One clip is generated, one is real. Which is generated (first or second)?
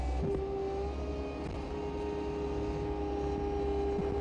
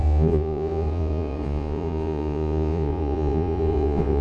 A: second